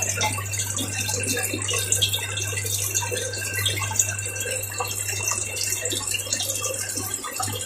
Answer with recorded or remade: recorded